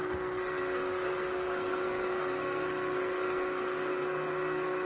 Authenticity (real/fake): fake